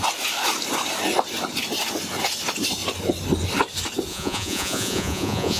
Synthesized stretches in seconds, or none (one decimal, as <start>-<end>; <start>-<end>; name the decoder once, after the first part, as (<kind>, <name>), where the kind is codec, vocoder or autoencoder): 4.1-5.6 (vocoder, Vocos)